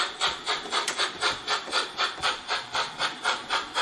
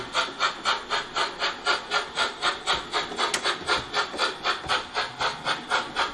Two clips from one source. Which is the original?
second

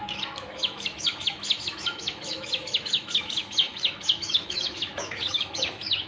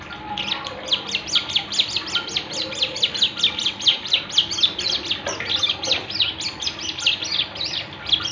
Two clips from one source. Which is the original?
second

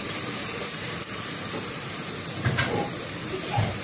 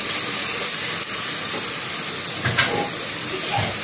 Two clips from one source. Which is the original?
second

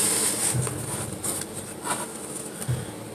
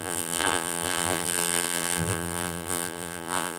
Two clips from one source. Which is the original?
first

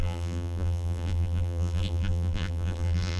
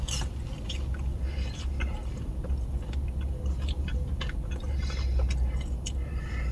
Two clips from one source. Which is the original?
second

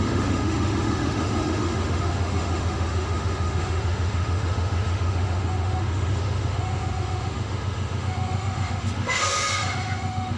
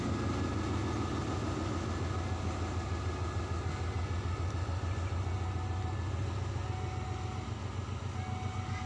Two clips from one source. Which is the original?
second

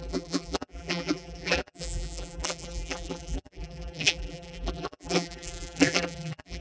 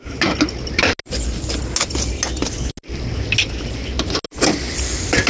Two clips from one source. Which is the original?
second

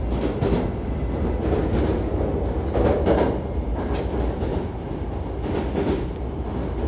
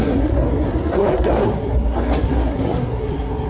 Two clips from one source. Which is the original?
first